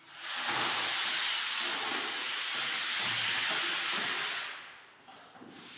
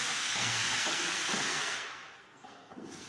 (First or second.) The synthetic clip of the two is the second